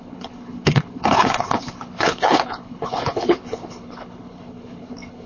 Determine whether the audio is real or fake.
fake